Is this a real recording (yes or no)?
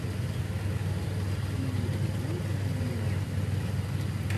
yes